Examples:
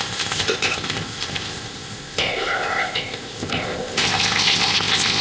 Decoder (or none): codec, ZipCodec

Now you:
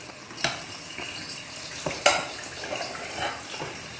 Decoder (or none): none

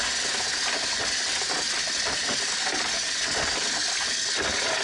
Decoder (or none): none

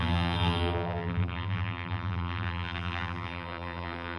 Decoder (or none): vocoder, BigVGAN v2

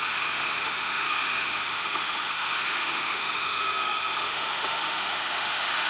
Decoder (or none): autoencoder, DAC-VAE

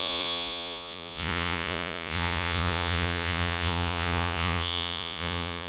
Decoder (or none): vocoder, Vocos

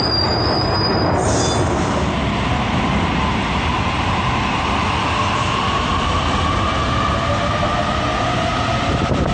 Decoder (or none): none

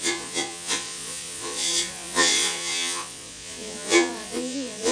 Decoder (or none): vocoder, Vocos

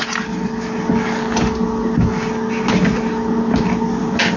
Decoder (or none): none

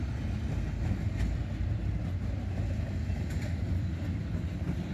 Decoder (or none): none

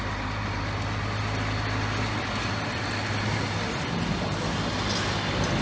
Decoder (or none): none